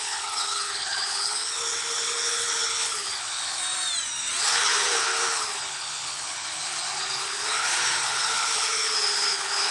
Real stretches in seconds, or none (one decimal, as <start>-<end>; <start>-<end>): 3.6-4.4